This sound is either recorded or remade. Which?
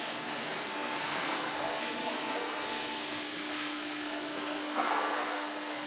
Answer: remade